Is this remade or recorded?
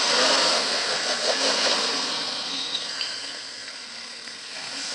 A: remade